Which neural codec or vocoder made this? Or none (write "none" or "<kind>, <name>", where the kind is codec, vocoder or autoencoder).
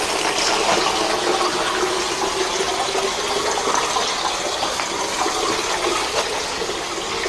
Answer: none